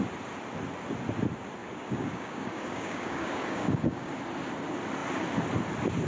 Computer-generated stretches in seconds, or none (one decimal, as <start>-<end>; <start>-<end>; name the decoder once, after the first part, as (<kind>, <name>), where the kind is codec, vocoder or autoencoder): 1.6-4.1 (codec, DAC)